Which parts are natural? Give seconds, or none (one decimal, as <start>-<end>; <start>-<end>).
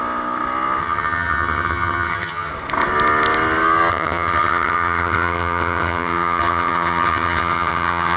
0.0-0.8; 2.5-3.9